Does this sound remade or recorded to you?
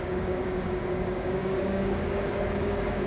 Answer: remade